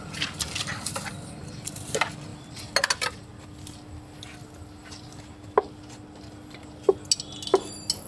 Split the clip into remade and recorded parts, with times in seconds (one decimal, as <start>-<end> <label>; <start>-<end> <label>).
0.0-8.1 recorded